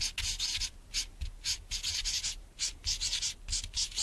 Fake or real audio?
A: real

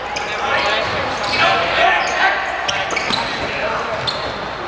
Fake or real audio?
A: real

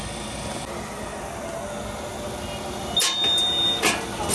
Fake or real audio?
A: real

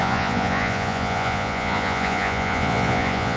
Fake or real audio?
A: fake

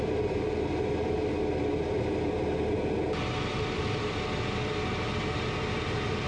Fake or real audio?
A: real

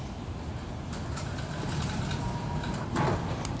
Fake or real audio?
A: real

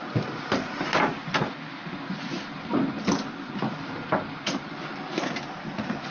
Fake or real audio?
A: real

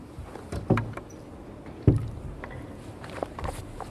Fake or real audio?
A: real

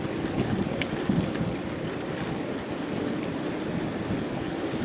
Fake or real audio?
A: real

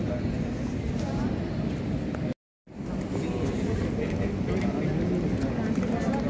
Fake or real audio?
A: real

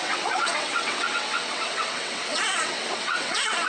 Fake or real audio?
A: fake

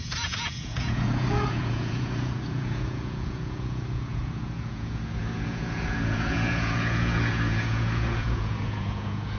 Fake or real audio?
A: fake